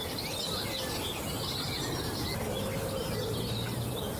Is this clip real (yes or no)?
yes